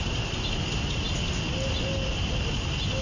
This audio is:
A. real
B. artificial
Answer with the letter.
A